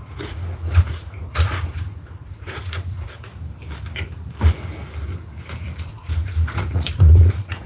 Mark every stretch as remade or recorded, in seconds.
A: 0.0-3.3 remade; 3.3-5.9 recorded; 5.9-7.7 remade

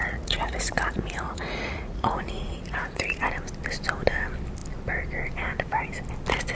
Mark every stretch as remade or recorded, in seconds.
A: 0.0-3.3 remade; 3.3-6.5 recorded

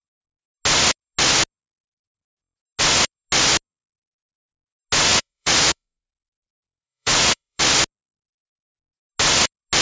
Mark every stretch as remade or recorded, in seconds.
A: 0.0-5.1 recorded; 5.1-7.6 remade; 7.6-9.8 recorded

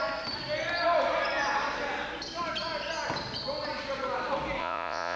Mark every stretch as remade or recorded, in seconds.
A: 0.0-4.6 recorded; 4.6-5.2 remade

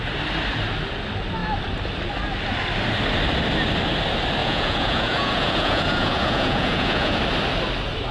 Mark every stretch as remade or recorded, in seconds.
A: 0.0-4.4 recorded; 4.4-7.2 remade; 7.2-8.1 recorded

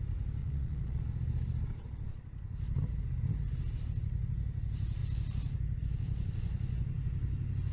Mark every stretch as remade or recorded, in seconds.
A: 0.0-0.4 recorded; 0.4-1.0 remade; 1.0-7.7 recorded

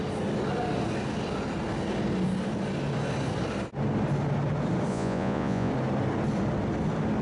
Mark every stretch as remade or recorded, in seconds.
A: 0.0-4.9 recorded; 4.9-5.7 remade; 5.7-7.2 recorded